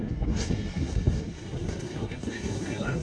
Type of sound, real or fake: fake